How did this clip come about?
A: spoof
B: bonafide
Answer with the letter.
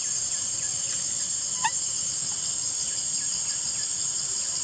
B